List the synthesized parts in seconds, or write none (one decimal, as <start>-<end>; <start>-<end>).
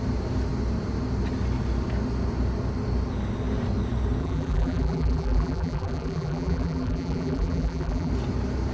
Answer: 4.2-8.1